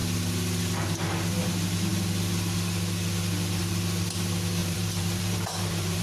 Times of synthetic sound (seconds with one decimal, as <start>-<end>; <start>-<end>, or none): 4.6-6.0